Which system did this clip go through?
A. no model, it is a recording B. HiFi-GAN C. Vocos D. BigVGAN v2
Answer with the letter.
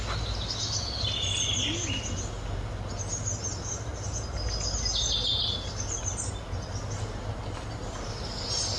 A